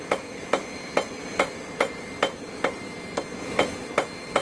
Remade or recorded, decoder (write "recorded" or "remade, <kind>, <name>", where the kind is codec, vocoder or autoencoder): recorded